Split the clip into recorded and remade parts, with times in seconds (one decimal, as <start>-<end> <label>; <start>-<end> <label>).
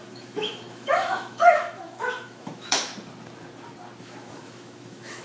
0.0-2.9 remade; 2.9-4.0 recorded; 4.0-5.2 remade